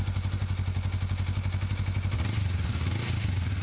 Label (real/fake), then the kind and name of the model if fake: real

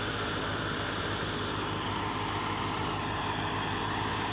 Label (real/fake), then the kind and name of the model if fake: real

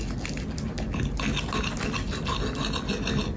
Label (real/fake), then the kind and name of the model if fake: real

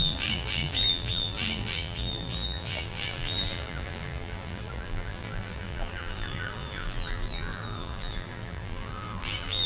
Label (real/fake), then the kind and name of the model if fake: fake, vocoder, BigVGAN v2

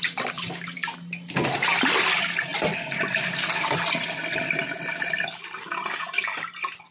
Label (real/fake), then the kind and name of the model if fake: real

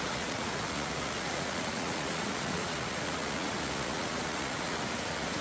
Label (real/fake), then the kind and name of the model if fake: fake, vocoder, Vocos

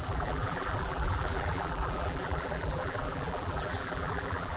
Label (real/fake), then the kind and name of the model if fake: fake, vocoder, BigVGAN v2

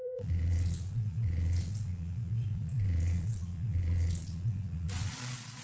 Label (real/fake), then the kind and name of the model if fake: fake, vocoder, Vocos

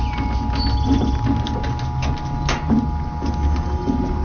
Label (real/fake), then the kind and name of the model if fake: real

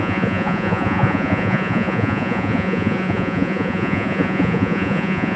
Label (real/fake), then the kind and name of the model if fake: fake, vocoder, Vocos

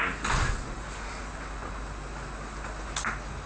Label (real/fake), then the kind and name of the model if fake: real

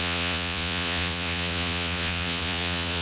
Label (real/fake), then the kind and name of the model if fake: fake, vocoder, Vocos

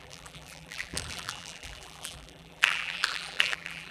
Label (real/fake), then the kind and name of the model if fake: fake, vocoder, BigVGAN v2